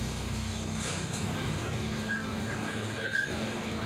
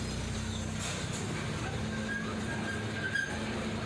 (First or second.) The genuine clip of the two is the second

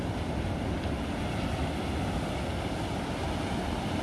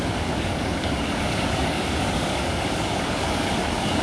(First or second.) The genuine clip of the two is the first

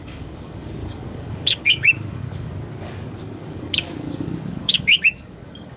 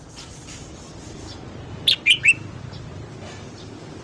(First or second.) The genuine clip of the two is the second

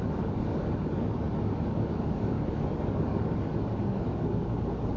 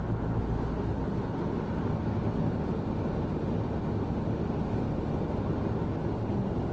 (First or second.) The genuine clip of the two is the second